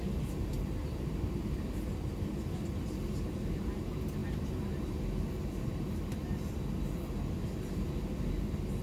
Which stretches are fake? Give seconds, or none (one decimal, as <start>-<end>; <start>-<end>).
none